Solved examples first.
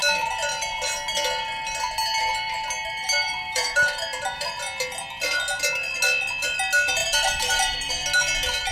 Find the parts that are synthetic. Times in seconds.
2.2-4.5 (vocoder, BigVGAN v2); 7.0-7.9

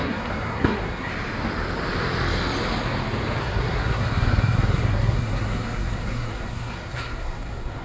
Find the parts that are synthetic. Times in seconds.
0.0-1.1 (codec, SNAC); 3.4-7.8